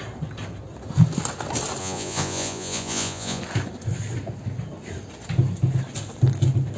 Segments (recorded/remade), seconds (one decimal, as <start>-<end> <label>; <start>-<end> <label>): 0.0-1.8 recorded; 1.8-3.4 remade; 3.4-6.8 recorded